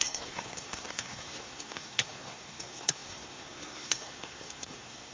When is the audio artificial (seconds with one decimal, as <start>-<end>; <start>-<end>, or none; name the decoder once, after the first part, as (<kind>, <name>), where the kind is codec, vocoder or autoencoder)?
0.0-5.1 (codec, SNAC)